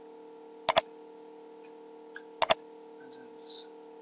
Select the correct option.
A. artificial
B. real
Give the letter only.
B